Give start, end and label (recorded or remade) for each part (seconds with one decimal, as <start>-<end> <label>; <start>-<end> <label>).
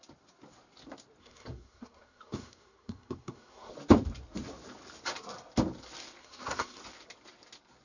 0.0-1.2 recorded; 1.2-3.7 remade; 3.7-6.2 recorded; 6.2-6.8 remade; 6.8-7.8 recorded